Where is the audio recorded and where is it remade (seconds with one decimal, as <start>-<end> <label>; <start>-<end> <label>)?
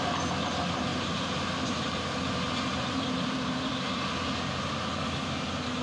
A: 0.0-0.9 recorded; 0.9-1.9 remade; 1.9-2.7 recorded; 2.7-3.7 remade; 3.7-5.8 recorded